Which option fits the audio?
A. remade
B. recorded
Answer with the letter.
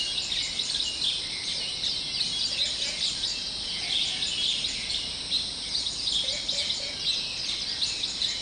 B